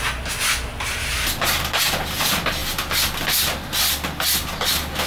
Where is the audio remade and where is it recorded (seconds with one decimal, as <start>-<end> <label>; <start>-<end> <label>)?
0.0-5.1 recorded